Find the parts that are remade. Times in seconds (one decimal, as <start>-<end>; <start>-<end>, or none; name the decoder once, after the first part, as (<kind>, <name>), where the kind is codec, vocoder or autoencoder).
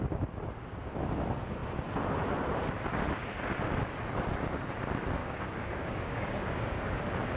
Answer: 5.2-7.0 (codec, DAC)